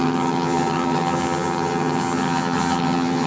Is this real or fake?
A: fake